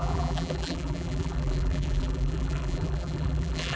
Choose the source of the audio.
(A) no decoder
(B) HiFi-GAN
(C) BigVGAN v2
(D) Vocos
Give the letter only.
C